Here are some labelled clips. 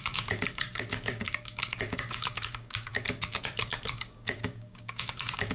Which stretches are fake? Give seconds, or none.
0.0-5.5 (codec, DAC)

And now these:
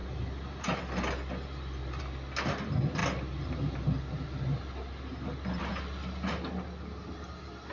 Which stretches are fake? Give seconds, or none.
none